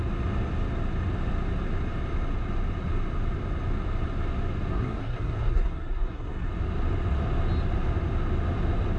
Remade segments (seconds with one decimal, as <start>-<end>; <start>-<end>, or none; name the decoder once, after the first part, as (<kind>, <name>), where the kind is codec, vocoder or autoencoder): 4.7-6.5 (codec, SNAC)